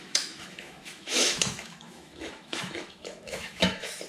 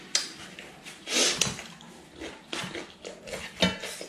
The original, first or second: second